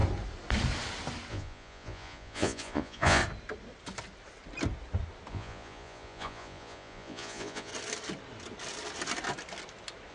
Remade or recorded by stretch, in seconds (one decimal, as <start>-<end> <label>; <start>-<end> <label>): 0.0-1.3 recorded; 1.3-3.2 remade; 3.2-5.3 recorded; 5.3-7.7 remade; 7.7-10.1 recorded

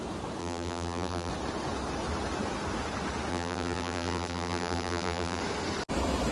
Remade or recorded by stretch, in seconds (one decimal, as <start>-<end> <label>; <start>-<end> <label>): 0.0-0.4 recorded; 0.4-1.3 remade; 1.3-3.3 recorded; 3.3-5.4 remade; 5.4-6.3 recorded

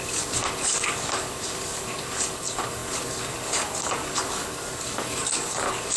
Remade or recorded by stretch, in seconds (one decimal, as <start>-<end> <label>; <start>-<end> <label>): 0.0-6.0 remade

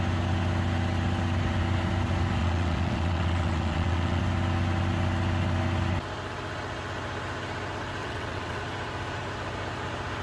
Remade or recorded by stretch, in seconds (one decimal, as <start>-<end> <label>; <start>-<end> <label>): 0.0-2.4 recorded; 2.4-4.2 remade; 4.2-8.0 recorded; 8.0-8.6 remade; 8.6-10.2 recorded